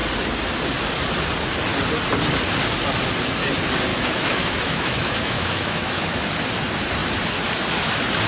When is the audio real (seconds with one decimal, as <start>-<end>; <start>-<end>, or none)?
0.0-3.9; 6.3-8.3